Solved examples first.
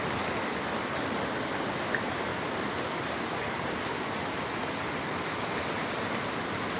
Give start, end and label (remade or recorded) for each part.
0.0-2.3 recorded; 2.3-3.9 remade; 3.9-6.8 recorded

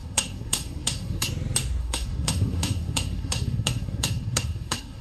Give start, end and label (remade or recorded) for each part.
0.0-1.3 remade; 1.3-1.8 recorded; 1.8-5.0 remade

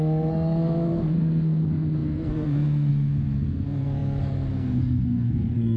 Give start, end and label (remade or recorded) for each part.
0.0-5.8 remade

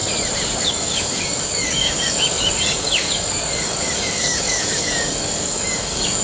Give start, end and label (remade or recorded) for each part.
0.0-0.6 recorded; 0.6-6.2 remade

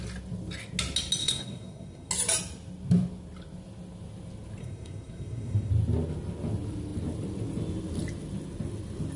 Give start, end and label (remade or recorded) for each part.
0.0-1.2 recorded; 1.2-2.1 remade; 2.1-4.6 recorded; 4.6-5.7 remade; 5.7-9.2 recorded

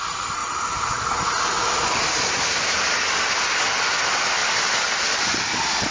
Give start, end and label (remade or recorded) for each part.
0.0-4.4 recorded; 4.4-5.9 remade

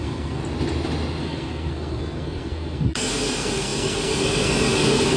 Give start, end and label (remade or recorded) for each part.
0.0-0.4 remade; 0.4-1.2 recorded; 1.2-5.2 remade

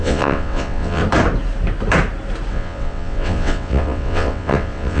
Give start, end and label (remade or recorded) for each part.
0.0-1.0 remade; 1.0-2.5 recorded; 2.5-5.0 remade